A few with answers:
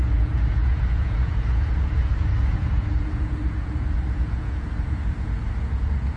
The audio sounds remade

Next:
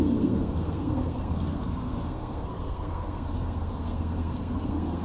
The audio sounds remade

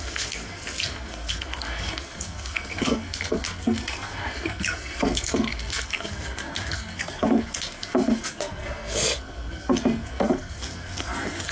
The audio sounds remade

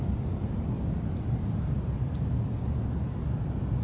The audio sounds recorded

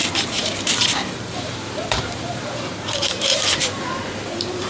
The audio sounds remade